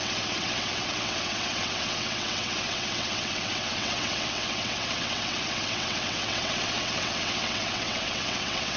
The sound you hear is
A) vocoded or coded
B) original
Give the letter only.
A